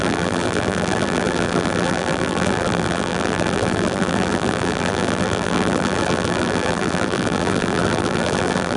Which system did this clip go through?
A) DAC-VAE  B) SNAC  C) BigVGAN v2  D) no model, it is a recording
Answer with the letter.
C